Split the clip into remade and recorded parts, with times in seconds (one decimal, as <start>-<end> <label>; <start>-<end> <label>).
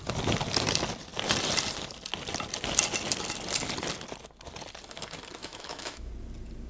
0.0-5.4 recorded; 5.4-6.1 remade; 6.1-6.7 recorded